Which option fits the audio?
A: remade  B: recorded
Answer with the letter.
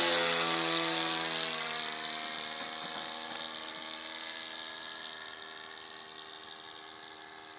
B